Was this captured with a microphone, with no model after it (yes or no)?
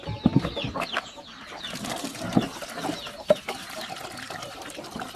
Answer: yes